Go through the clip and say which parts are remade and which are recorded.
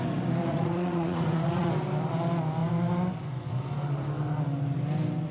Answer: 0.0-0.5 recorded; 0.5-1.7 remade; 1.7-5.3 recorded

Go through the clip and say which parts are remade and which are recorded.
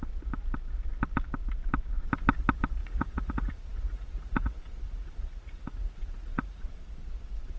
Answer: 0.0-2.8 recorded; 2.8-6.6 remade; 6.6-7.6 recorded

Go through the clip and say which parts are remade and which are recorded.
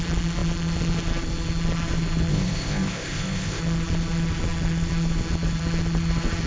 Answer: 0.0-2.3 recorded; 2.3-3.6 remade; 3.6-6.5 recorded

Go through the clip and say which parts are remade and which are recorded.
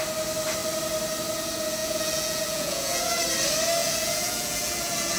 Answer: 0.0-1.8 recorded; 1.8-3.2 remade; 3.2-3.8 recorded; 3.8-5.2 remade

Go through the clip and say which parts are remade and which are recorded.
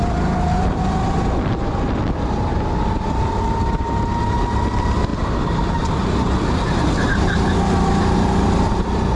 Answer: 0.0-9.2 recorded